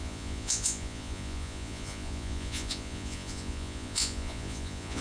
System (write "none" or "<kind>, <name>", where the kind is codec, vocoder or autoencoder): vocoder, Vocos